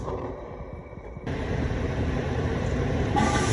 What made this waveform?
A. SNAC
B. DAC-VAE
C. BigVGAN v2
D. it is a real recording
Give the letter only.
C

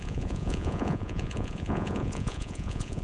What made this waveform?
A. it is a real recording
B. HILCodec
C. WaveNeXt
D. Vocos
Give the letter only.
D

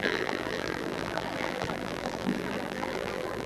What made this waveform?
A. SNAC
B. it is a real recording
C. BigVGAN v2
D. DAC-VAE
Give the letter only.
C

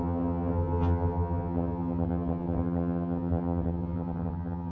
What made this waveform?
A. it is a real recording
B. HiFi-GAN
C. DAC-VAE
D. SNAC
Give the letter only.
B